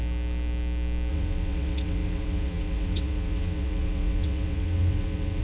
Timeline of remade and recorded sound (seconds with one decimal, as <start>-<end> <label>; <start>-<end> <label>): 0.0-1.1 recorded; 1.1-5.4 remade